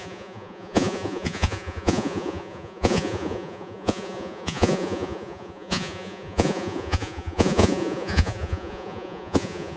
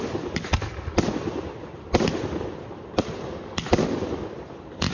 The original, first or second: second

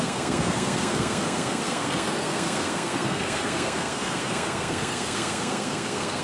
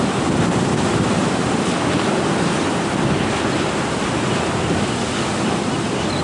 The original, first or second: second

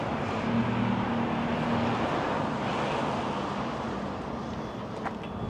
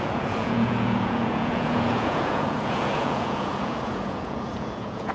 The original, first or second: first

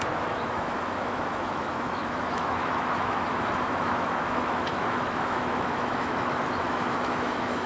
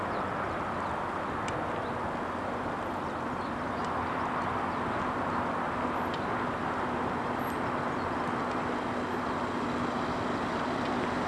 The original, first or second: second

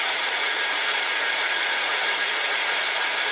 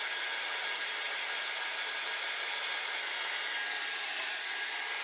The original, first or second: second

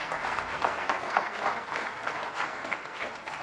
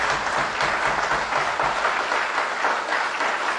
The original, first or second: second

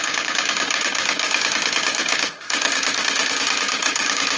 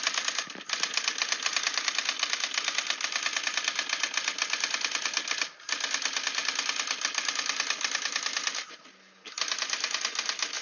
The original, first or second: second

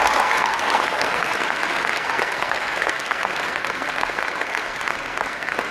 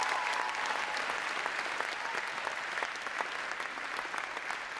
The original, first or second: second